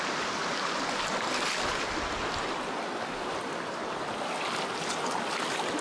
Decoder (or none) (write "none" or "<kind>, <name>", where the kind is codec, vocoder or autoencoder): none